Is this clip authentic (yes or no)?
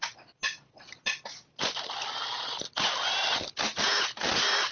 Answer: yes